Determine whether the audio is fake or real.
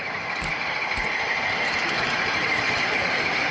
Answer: real